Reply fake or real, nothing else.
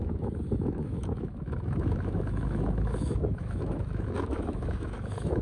fake